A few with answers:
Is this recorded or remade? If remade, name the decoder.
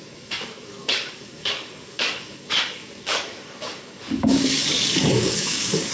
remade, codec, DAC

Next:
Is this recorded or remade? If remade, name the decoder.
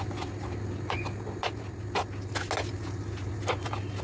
recorded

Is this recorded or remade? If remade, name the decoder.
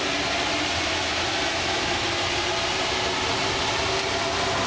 recorded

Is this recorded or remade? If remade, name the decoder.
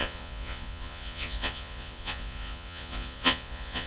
remade, vocoder, Vocos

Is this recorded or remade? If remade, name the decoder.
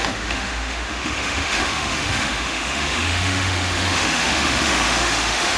remade, autoencoder, DAC-VAE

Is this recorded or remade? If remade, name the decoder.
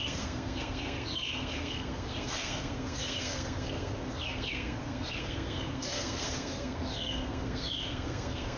remade, codec, SNAC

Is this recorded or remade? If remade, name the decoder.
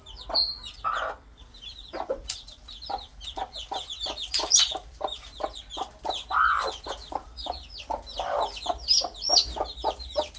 recorded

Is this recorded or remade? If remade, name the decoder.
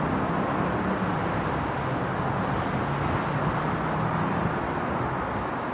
recorded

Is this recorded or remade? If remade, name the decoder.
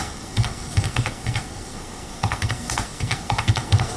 remade, codec, SNAC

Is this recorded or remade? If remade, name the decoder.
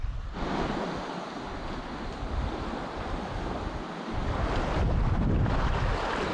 recorded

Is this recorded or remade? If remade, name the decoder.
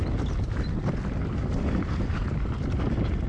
recorded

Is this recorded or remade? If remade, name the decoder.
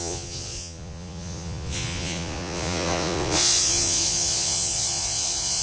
remade, vocoder, Vocos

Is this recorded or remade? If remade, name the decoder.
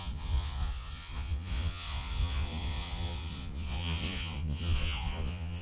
remade, vocoder, Vocos